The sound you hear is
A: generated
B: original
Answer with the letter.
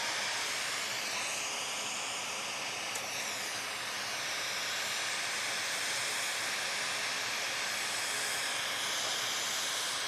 B